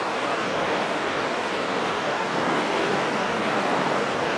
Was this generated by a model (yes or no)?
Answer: yes